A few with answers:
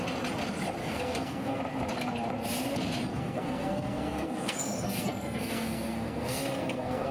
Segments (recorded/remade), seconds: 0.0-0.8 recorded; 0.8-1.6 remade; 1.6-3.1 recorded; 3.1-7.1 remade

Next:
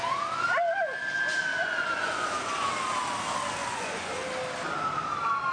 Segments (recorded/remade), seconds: 0.0-1.5 recorded; 1.5-2.7 remade; 2.7-3.6 recorded; 3.6-4.2 remade; 4.2-5.5 recorded

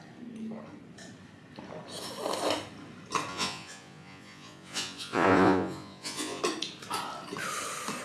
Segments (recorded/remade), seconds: 0.0-3.3 recorded; 3.3-6.4 remade; 6.4-8.0 recorded

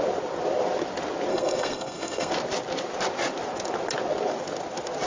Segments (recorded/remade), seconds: 0.0-1.3 recorded; 1.3-2.3 remade; 2.3-5.1 recorded

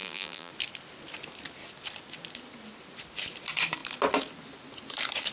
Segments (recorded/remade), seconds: 0.0-0.5 remade; 0.5-5.3 recorded

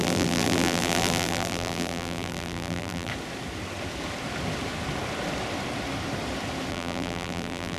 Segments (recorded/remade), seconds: 0.0-3.1 remade; 3.1-6.7 recorded; 6.7-7.8 remade